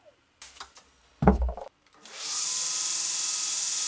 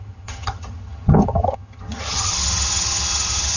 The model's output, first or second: second